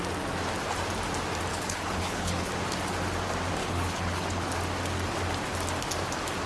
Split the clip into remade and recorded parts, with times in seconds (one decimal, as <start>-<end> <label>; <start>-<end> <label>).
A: 0.0-1.5 recorded; 1.5-2.5 remade; 2.5-3.6 recorded; 3.6-4.5 remade; 4.5-6.5 recorded